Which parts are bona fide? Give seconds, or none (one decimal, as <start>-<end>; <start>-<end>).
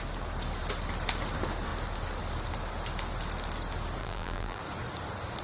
0.0-4.0; 4.6-5.4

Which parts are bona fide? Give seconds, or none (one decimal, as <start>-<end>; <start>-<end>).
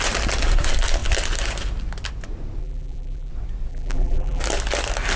0.0-2.6; 3.3-3.7; 4.4-5.2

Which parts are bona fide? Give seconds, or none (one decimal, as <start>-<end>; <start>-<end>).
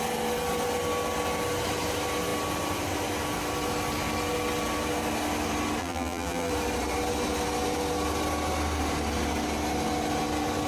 0.0-5.8; 6.5-10.7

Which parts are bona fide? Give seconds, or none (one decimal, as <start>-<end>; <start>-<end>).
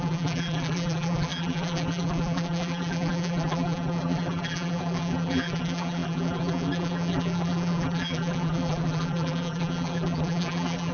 none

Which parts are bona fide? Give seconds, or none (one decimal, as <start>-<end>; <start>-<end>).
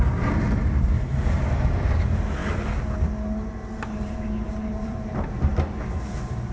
2.4-3.9; 5.5-6.5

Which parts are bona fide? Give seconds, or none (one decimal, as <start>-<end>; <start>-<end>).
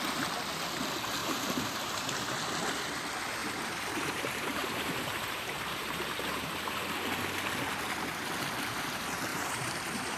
0.0-1.2; 2.3-3.4; 6.7-9.3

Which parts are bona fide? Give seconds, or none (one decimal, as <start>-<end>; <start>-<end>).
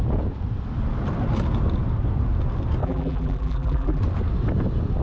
0.0-2.8; 4.0-5.0